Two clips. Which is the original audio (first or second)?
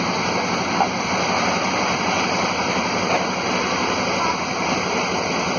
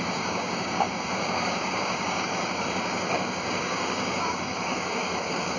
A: first